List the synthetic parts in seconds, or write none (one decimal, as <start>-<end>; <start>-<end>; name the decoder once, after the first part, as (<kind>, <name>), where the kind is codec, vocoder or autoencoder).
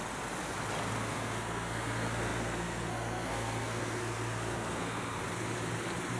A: 1.1-5.2 (codec, SNAC)